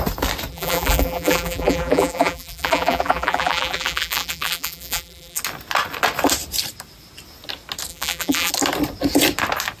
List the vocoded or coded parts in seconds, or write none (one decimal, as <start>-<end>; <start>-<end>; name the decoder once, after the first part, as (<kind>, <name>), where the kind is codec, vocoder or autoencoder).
0.5-5.4 (vocoder, BigVGAN v2); 7.9-8.5